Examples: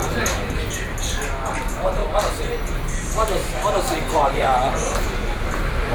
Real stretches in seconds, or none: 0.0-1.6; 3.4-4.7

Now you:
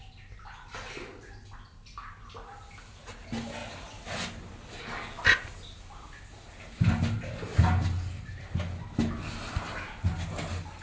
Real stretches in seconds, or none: 0.0-10.8

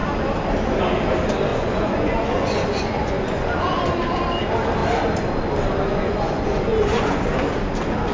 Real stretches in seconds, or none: 0.0-1.5; 3.8-5.9; 7.2-8.1

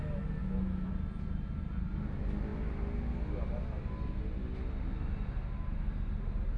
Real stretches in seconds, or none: 0.0-0.4; 0.9-6.6

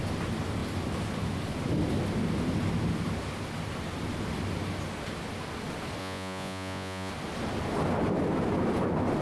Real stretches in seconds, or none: 0.0-6.0; 7.1-9.2

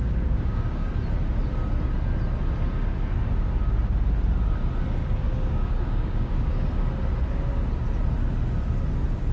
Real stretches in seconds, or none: 0.9-5.0; 6.7-9.3

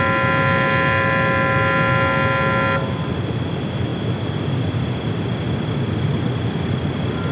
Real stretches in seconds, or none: 0.0-7.3